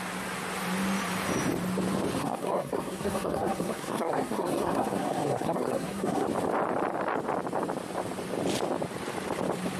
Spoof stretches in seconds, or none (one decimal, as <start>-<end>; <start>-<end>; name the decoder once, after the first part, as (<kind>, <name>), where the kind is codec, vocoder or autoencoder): 2.2-6.3 (codec, SNAC)